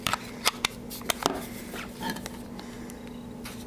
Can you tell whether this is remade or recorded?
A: recorded